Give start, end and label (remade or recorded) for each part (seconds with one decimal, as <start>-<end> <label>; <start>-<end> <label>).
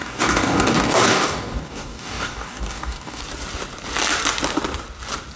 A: 0.0-3.2 remade; 3.2-5.4 recorded